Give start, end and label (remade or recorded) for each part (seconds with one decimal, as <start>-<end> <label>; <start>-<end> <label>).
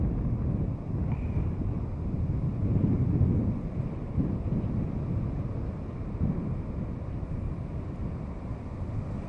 0.0-9.3 recorded